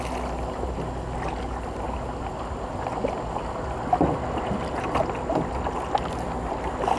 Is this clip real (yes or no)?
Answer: yes